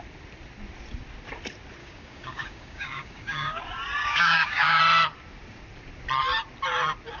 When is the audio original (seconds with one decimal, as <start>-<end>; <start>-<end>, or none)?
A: 0.0-1.8; 3.6-4.0; 4.8-7.2